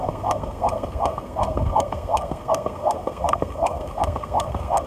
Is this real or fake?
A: fake